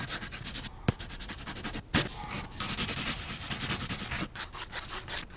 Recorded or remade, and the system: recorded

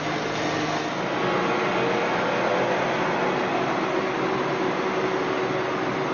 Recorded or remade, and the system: recorded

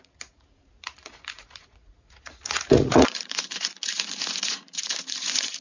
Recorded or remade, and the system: remade, vocoder, Vocos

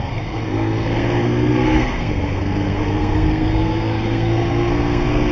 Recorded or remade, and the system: remade, codec, SNAC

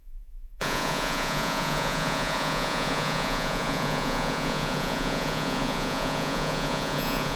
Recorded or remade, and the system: remade, vocoder, Vocos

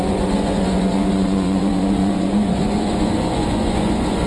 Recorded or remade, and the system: remade, vocoder, Vocos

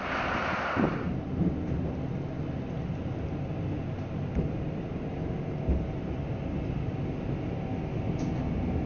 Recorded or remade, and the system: recorded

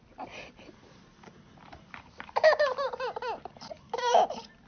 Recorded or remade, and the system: remade, vocoder, BigVGAN v2